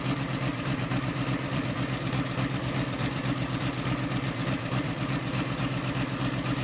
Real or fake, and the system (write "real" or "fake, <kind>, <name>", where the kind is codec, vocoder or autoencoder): fake, vocoder, BigVGAN v2